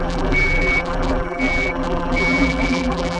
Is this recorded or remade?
remade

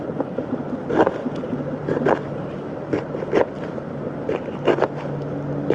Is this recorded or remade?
recorded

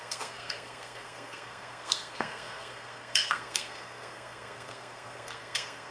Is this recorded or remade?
remade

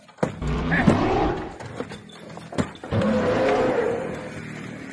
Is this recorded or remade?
recorded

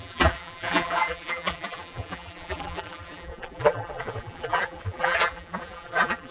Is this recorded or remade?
remade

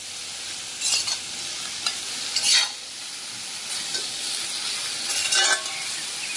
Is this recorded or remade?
recorded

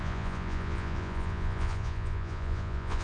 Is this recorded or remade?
remade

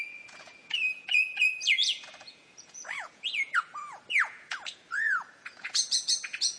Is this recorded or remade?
remade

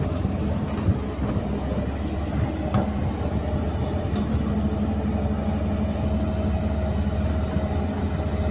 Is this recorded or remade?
recorded